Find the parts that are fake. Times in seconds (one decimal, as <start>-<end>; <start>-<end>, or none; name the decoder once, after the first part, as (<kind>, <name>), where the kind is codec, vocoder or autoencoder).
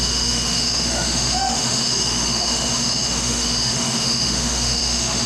0.0-5.3 (autoencoder, DAC-VAE)